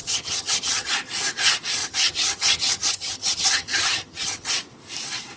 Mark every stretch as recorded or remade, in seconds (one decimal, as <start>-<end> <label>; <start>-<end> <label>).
0.0-0.9 remade; 0.9-1.8 recorded; 1.8-4.5 remade; 4.5-5.4 recorded